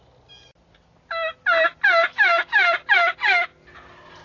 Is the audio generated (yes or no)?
no